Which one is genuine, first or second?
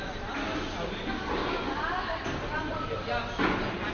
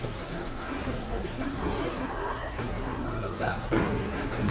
first